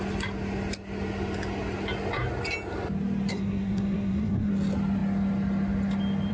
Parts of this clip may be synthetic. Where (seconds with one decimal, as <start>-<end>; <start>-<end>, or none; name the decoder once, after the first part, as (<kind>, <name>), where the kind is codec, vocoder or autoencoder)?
3.3-4.5 (codec, SNAC)